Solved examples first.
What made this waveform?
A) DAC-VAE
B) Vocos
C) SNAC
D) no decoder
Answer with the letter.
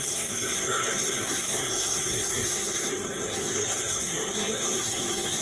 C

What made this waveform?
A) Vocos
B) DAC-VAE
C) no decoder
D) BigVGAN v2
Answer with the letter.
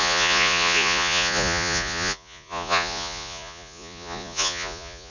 A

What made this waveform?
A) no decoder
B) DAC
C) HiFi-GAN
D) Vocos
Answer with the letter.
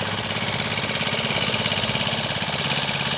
A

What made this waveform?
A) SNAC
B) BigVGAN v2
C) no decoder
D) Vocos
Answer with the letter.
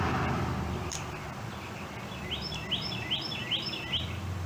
C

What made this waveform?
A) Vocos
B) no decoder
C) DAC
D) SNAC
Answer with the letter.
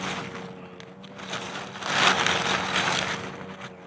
B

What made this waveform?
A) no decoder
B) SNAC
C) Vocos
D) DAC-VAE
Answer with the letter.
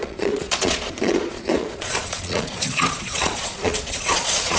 C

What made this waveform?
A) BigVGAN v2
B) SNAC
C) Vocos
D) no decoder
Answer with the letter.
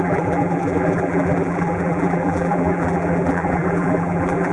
A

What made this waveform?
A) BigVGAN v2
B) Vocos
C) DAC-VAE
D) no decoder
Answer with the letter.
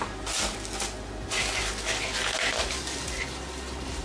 D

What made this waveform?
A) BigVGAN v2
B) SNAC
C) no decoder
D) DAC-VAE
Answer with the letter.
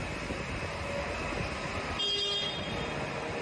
C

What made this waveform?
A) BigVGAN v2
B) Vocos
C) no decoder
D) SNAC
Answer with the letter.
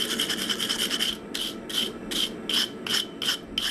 C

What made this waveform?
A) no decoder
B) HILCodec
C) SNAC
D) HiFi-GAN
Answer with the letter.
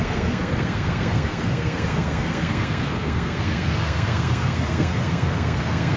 C